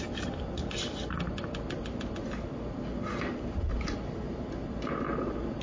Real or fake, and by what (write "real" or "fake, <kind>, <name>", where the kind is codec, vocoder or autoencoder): real